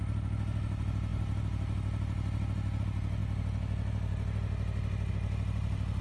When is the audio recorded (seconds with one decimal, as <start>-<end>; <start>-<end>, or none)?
0.0-6.0